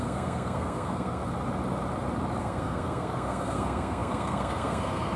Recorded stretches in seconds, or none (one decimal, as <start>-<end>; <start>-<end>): 1.2-2.4